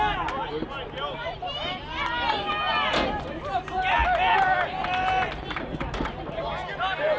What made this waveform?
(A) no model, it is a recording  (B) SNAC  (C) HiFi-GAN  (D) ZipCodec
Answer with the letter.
A